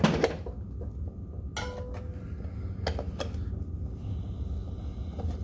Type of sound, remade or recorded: recorded